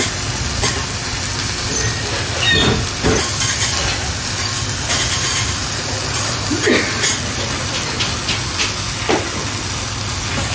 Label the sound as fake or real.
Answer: real